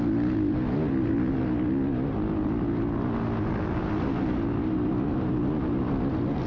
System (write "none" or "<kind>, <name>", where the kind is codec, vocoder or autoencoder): none